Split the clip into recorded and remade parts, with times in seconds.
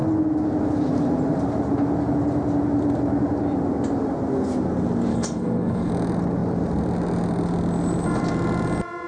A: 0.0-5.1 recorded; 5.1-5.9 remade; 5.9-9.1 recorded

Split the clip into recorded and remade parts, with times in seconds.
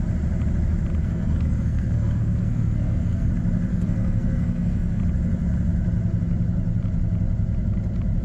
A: 0.0-1.0 recorded; 1.0-3.3 remade; 3.3-3.7 recorded; 3.7-5.0 remade; 5.0-8.2 recorded